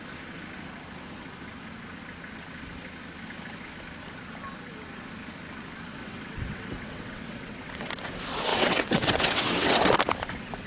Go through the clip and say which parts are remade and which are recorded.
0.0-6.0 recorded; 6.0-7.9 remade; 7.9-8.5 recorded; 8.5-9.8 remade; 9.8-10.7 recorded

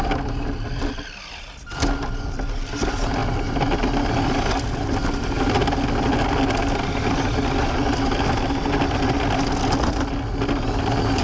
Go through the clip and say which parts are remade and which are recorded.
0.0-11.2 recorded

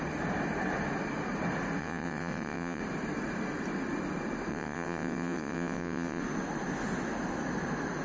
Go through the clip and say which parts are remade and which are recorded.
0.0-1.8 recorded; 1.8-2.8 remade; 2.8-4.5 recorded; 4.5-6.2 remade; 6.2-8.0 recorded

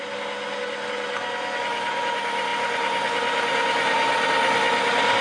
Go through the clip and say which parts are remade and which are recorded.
0.0-5.2 recorded